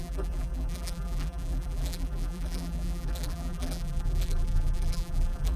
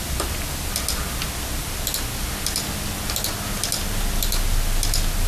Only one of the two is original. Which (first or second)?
second